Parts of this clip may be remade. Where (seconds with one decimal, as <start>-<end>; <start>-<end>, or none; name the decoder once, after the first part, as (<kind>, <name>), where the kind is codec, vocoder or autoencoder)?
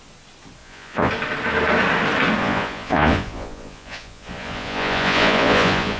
0.6-1.1 (vocoder, Vocos); 2.4-6.0